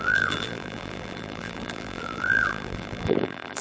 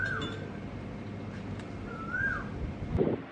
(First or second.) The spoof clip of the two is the first